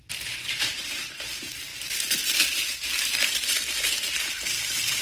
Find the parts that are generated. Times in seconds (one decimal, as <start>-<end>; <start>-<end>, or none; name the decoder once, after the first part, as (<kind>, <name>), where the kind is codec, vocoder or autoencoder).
0.0-5.0 (vocoder, BigVGAN v2)